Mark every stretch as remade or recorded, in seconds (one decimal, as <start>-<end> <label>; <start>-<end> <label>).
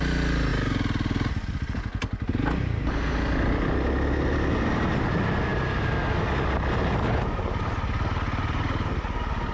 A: 0.0-9.5 recorded